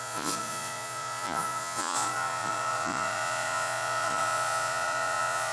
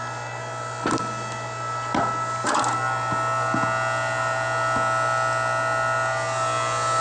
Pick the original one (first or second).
second